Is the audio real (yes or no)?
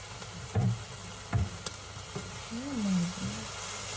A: yes